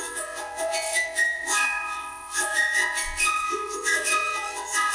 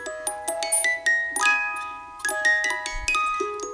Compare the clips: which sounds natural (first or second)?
second